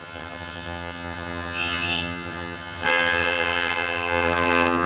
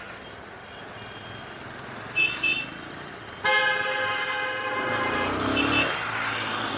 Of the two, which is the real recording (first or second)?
second